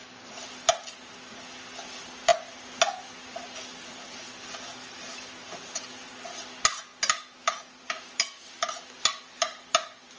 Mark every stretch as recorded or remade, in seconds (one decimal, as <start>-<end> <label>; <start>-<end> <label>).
0.0-10.2 recorded